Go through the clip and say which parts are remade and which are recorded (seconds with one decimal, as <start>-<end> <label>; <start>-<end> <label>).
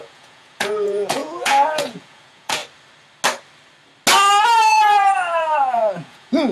0.0-2.6 remade; 2.6-4.4 recorded; 4.4-6.5 remade